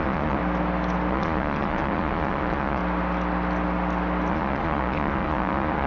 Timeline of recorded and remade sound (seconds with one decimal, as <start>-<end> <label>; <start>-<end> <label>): 0.0-0.4 remade; 0.4-1.1 recorded; 1.1-2.8 remade; 2.8-4.3 recorded; 4.3-5.9 remade